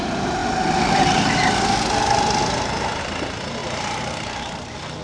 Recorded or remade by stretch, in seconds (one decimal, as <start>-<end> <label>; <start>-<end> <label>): 0.0-3.6 recorded; 3.6-5.0 remade

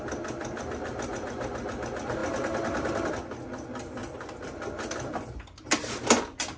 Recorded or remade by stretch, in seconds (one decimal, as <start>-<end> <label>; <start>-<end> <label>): 0.0-2.2 recorded; 2.2-3.1 remade; 3.1-4.0 recorded; 4.0-5.7 remade; 5.7-6.6 recorded

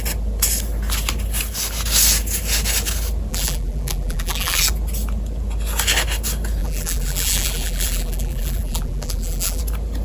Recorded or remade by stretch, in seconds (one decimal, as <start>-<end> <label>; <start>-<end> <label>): 0.0-3.3 recorded; 3.3-4.7 remade; 4.7-6.6 recorded; 6.6-9.6 remade; 9.6-10.0 recorded

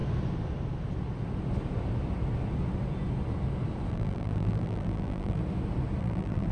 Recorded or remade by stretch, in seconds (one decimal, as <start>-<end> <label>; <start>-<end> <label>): 0.0-3.9 recorded; 3.9-5.4 remade; 5.4-6.0 recorded; 6.0-6.5 remade

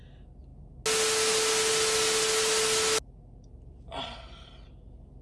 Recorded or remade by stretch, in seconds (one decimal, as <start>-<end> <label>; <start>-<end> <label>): 0.0-5.2 recorded

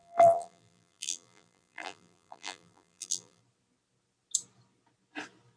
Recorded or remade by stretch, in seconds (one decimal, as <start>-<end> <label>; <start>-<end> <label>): 0.0-3.4 remade; 3.4-5.6 recorded

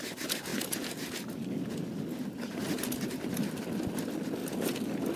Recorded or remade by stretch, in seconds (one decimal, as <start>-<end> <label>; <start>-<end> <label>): 0.0-5.2 recorded

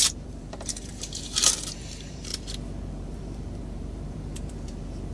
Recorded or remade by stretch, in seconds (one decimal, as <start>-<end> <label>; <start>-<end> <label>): 0.0-2.3 remade; 2.3-2.9 recorded; 2.9-5.1 remade